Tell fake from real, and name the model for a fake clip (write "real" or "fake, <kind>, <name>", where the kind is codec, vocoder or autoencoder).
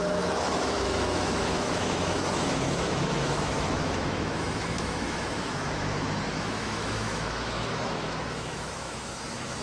fake, autoencoder, DAC-VAE